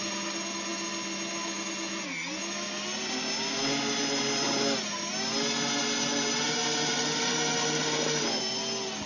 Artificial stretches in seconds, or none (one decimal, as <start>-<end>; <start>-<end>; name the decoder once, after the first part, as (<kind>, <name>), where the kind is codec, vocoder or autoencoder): none